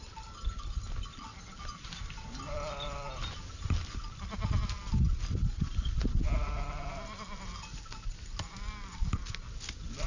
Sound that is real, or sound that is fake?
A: real